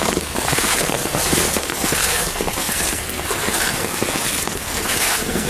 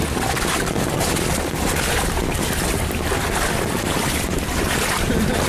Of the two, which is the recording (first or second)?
second